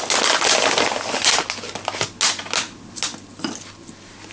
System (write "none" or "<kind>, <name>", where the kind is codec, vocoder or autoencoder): none